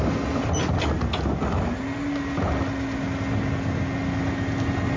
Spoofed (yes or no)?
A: no